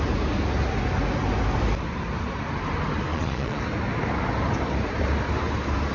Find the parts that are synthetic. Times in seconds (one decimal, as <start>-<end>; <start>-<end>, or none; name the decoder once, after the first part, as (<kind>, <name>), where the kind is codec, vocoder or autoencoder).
3.1-3.6 (vocoder, Vocos)